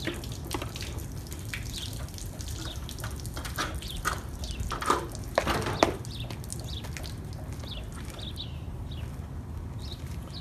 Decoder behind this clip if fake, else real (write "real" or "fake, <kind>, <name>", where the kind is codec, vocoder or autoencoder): real